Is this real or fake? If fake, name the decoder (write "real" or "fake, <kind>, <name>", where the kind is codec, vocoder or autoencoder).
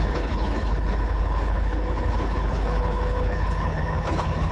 fake, codec, HILCodec